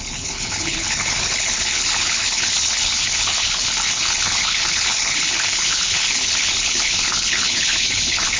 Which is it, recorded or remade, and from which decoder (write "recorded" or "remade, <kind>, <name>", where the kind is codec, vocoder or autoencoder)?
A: remade, codec, HILCodec